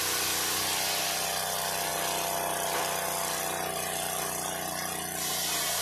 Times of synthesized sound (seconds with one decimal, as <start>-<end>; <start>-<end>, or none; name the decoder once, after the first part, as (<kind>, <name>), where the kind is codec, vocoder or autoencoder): none